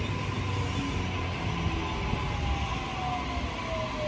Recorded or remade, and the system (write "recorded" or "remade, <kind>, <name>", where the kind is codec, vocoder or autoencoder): recorded